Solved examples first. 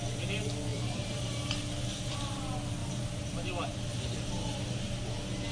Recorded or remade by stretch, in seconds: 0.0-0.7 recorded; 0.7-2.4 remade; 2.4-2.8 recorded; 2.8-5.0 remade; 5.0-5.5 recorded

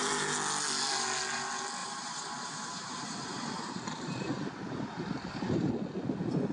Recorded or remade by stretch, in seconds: 0.0-1.8 recorded; 1.8-5.7 remade; 5.7-6.5 recorded

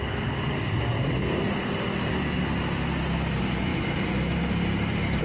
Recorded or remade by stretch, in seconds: 0.0-3.7 recorded; 3.7-5.2 remade

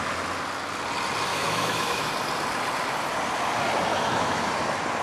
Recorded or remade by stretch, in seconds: 0.0-1.3 recorded; 1.3-2.1 remade; 2.1-3.9 recorded; 3.9-4.5 remade; 4.5-5.0 recorded

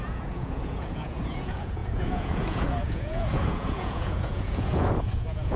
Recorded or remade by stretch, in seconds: 0.0-5.6 remade

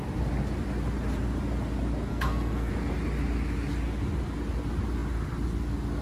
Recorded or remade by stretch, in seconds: 0.0-2.1 recorded; 2.1-2.7 remade; 2.7-6.0 recorded